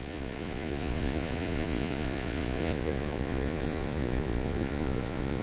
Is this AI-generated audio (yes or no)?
yes